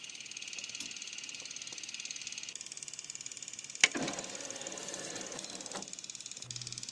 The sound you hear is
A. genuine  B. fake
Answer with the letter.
A